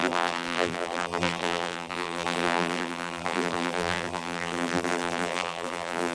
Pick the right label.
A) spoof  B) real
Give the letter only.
A